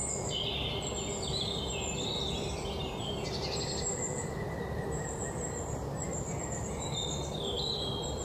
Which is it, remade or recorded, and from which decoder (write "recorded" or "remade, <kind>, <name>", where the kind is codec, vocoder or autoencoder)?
recorded